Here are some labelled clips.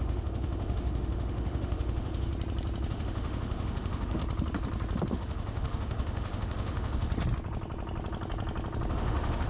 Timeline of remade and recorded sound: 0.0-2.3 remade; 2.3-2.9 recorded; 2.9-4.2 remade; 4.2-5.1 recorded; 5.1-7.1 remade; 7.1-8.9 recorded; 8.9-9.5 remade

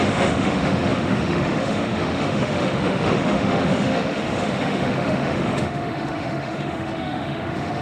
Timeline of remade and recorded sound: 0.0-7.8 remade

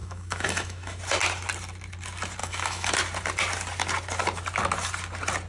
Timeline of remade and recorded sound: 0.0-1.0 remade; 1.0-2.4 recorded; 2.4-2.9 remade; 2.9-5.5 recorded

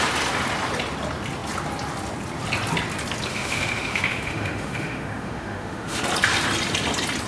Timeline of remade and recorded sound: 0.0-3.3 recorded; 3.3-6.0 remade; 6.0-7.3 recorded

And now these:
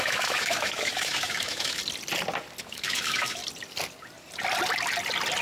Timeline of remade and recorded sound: 0.0-1.8 remade; 1.8-2.6 recorded; 2.6-3.4 remade; 3.4-5.4 recorded

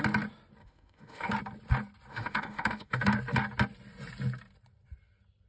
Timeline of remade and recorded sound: 0.0-0.6 recorded; 0.6-1.3 remade; 1.3-2.1 recorded; 2.1-3.0 remade; 3.0-5.5 recorded

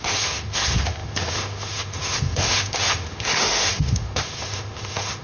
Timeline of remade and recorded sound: 0.0-5.2 remade

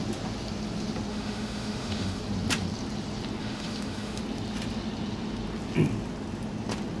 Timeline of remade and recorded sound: 0.0-1.1 recorded; 1.1-2.2 remade; 2.2-3.4 recorded; 3.4-4.2 remade; 4.2-7.0 recorded